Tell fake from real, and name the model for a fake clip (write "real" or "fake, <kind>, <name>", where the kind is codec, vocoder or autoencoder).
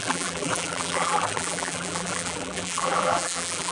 fake, vocoder, BigVGAN v2